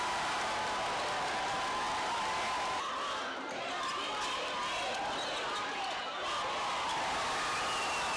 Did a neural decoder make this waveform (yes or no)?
no